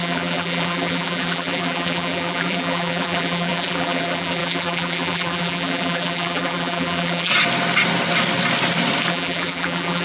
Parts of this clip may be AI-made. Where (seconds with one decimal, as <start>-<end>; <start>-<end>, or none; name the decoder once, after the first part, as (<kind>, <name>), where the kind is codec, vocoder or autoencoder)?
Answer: 0.0-7.3 (vocoder, BigVGAN v2); 9.1-10.0